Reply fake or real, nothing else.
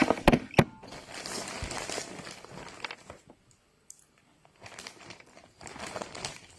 real